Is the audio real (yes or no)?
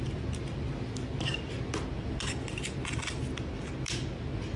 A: yes